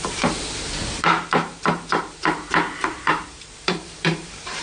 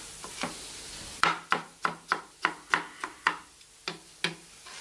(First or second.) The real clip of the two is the second